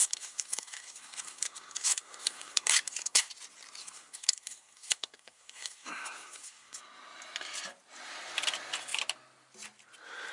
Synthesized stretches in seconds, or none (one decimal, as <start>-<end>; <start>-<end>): 0.0-3.3; 3.8-6.8